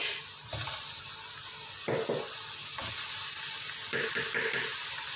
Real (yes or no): yes